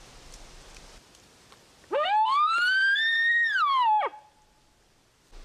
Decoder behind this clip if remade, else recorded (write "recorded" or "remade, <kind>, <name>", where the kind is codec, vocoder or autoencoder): recorded